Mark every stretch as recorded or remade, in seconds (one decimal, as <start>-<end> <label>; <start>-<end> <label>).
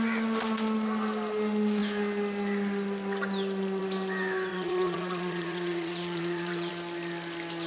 0.0-4.5 recorded; 4.5-6.7 remade; 6.7-7.7 recorded